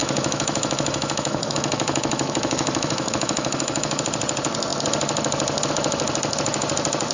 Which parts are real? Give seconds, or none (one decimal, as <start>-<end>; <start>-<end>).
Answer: 4.0-7.1